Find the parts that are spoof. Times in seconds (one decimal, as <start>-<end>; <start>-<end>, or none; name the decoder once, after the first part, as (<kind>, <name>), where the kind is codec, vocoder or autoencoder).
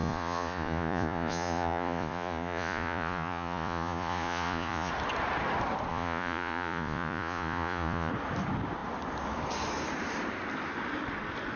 0.0-4.9 (vocoder, Vocos); 5.9-8.1